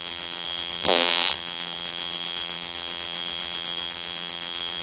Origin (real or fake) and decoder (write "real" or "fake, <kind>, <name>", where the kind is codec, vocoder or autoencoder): fake, vocoder, BigVGAN v2